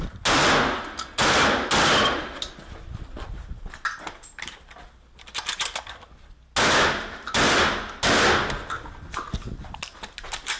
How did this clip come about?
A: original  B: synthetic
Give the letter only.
A